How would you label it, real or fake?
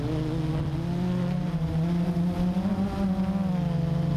real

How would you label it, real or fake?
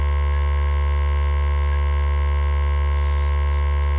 real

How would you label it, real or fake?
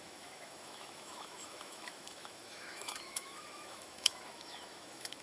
fake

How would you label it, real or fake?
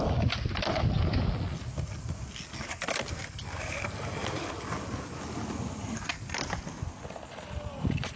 real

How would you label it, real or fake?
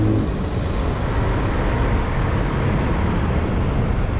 real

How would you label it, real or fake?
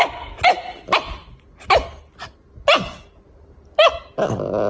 real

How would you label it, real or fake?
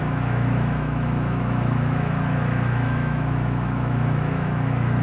fake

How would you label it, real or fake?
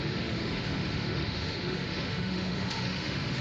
fake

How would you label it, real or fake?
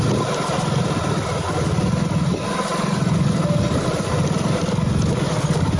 real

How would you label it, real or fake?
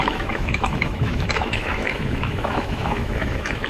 fake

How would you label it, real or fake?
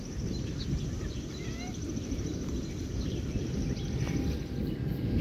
real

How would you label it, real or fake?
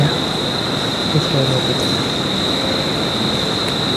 real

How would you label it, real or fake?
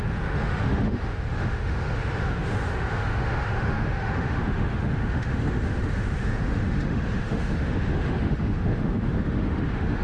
fake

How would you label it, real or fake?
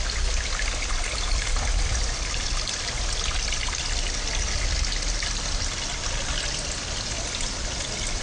real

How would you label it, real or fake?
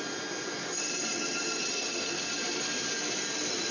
real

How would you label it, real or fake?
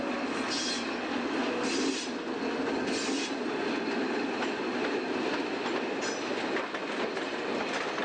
real